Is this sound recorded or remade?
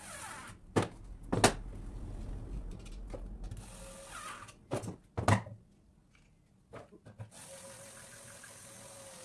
recorded